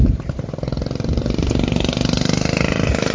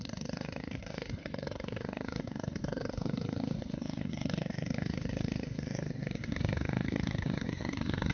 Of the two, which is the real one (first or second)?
first